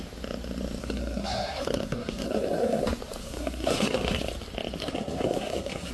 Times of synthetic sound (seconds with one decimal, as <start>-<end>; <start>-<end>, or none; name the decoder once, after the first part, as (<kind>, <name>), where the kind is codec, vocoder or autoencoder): 0.8-2.8 (codec, SNAC); 3.2-4.2; 4.8-5.9